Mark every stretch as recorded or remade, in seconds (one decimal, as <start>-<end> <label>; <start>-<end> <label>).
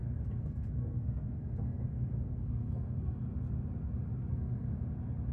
0.0-3.2 remade; 3.2-4.2 recorded; 4.2-4.8 remade; 4.8-5.3 recorded